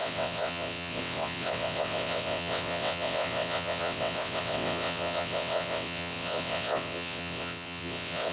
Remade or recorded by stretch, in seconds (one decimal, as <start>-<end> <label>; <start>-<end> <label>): 0.0-8.3 remade